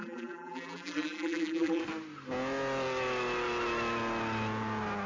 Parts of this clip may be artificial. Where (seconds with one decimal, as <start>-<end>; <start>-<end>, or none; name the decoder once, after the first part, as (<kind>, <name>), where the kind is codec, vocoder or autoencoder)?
0.0-1.8 (vocoder, BigVGAN v2)